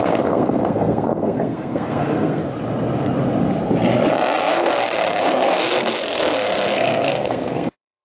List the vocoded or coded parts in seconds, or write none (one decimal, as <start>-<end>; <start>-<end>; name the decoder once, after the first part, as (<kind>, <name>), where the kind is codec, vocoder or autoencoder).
0.0-2.4 (codec, SNAC); 4.5-8.0